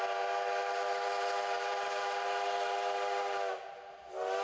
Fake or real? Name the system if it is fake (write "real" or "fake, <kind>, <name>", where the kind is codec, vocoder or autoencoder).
real